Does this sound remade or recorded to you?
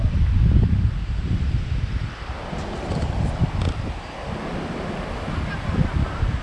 recorded